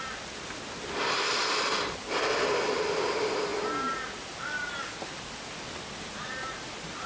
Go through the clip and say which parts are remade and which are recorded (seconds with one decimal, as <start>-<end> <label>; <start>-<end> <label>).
0.0-7.1 recorded